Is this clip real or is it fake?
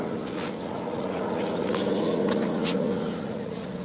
fake